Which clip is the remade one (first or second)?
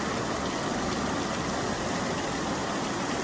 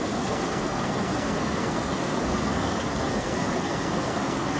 second